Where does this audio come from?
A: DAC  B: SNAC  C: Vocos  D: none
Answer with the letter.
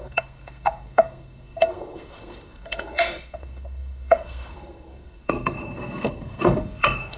B